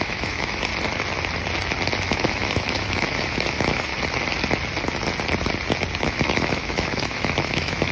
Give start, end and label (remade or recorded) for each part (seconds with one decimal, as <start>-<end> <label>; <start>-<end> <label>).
0.0-0.7 remade; 0.7-2.0 recorded; 2.0-3.9 remade; 3.9-6.0 recorded; 6.0-7.9 remade